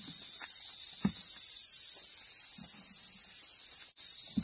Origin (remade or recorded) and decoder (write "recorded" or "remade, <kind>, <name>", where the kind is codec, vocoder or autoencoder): recorded